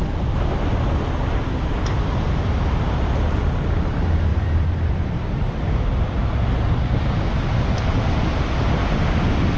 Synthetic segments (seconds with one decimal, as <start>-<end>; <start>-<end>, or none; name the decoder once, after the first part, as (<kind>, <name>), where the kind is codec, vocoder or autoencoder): 4.3-6.3 (vocoder, BigVGAN v2)